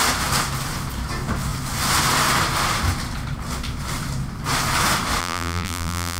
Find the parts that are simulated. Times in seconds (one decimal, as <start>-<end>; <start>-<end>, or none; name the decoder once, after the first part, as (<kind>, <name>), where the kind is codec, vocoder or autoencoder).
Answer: 5.2-6.2 (vocoder, BigVGAN v2)